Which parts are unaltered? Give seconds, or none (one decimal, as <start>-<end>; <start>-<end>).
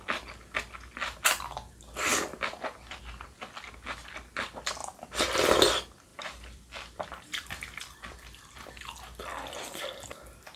0.0-2.1; 3.0-6.1; 8.8-9.3; 10.1-10.6